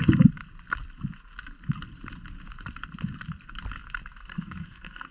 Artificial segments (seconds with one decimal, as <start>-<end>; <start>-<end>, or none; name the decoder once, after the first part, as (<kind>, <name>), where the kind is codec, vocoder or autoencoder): 4.2-5.1 (codec, SNAC)